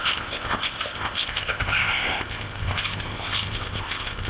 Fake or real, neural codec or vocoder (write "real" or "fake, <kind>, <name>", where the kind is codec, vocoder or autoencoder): fake, codec, ZipCodec